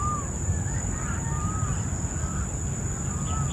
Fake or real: real